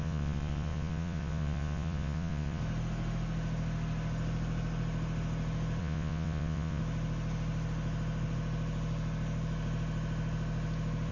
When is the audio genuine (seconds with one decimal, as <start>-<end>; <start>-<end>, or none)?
2.6-5.8; 6.8-11.1

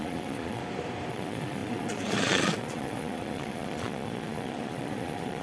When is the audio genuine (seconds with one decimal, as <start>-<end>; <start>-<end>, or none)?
0.6-1.1

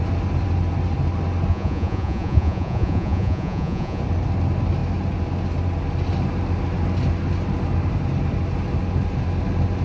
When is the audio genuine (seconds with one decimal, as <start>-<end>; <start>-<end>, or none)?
0.0-1.5; 4.0-9.8

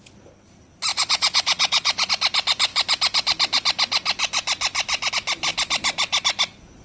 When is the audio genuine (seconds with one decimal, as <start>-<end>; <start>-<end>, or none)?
0.0-0.9; 2.1-6.8